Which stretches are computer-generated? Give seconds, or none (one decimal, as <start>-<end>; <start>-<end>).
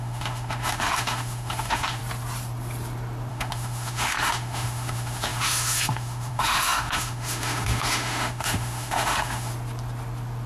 0.0-2.0; 3.3-9.5